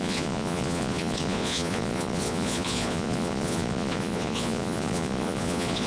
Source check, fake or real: fake